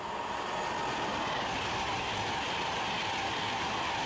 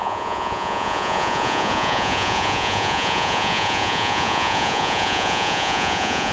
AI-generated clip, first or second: second